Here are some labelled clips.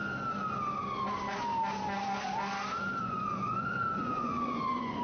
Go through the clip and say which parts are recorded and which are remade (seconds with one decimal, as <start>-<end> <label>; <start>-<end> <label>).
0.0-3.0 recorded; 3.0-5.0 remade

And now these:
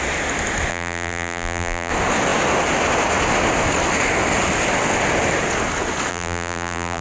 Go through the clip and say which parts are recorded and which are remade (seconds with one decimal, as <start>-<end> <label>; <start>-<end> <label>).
0.0-0.7 recorded; 0.7-1.9 remade; 1.9-6.1 recorded; 6.1-7.0 remade

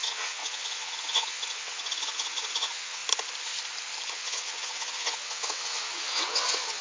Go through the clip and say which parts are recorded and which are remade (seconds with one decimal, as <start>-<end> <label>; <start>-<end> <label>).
0.0-3.0 remade; 3.0-4.1 recorded; 4.1-6.8 remade